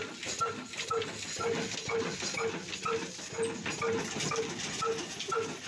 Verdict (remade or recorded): recorded